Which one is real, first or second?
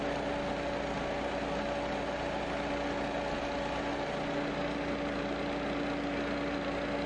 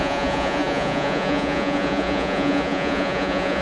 first